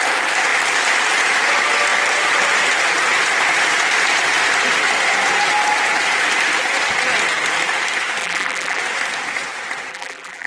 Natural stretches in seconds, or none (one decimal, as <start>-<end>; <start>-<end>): 0.0-8.2; 8.8-9.9

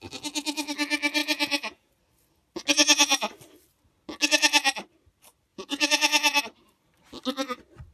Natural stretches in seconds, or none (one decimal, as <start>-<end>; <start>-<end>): 0.0-1.2; 1.9-5.5; 6.4-7.9

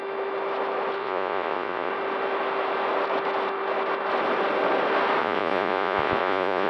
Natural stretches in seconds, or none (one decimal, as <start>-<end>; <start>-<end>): 0.0-1.0; 1.9-5.2

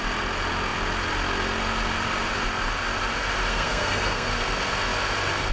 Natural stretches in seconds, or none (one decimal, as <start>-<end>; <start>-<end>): 0.0-3.5; 4.3-5.5

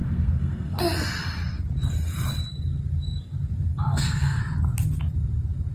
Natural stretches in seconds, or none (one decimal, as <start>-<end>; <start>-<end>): 0.8-3.7; 4.4-5.7